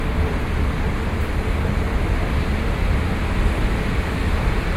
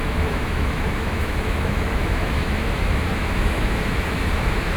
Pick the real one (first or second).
first